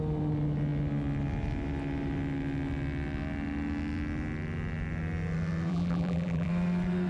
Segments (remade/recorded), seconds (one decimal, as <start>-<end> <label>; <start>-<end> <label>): 0.0-5.7 recorded; 5.7-6.5 remade; 6.5-7.1 recorded